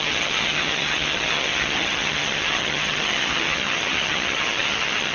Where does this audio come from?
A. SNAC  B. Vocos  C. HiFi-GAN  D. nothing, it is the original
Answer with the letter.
C